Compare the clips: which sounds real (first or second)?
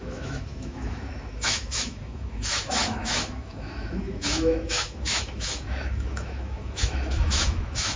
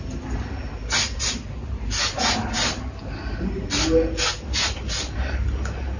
second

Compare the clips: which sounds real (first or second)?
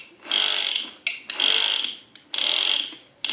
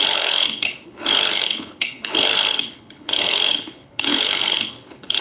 first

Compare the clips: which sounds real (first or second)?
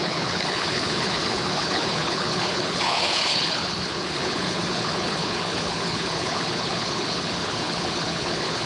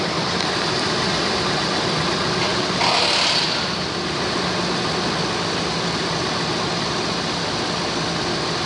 second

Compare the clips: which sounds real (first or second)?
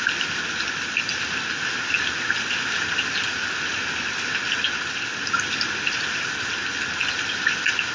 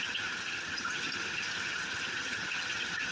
first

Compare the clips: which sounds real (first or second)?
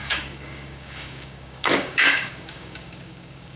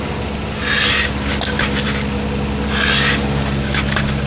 second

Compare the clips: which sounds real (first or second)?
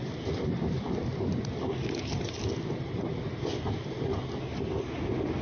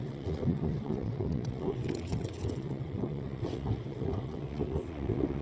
first